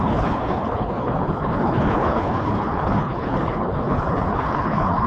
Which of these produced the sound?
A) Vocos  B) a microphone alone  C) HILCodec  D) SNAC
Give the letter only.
C